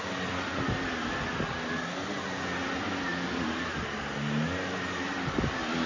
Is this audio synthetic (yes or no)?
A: no